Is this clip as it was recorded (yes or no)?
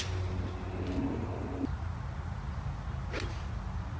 yes